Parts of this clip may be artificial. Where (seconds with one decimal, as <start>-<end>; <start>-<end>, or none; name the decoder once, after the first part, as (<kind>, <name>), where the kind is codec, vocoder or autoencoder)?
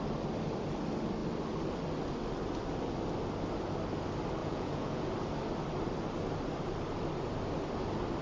4.4-5.1 (vocoder, Vocos)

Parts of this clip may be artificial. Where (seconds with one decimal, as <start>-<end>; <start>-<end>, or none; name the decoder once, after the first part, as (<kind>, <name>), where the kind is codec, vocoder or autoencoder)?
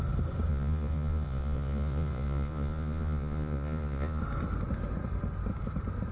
0.5-4.2 (vocoder, Vocos)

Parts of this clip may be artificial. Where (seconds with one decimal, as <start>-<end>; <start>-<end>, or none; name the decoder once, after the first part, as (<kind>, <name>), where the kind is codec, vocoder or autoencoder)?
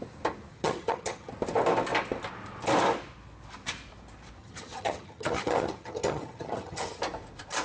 0.5-1.3 (vocoder, HiFi-GAN); 4.4-7.0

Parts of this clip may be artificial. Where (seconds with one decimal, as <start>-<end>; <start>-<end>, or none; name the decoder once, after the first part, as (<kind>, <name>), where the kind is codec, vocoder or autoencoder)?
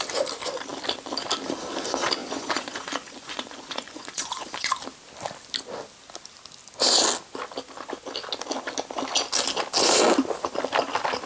2.2-4.7 (vocoder, Vocos)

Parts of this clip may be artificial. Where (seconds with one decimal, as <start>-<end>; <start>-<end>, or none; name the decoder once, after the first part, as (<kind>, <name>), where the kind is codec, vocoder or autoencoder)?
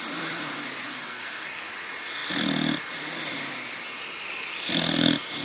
0.9-1.7 (codec, SNAC)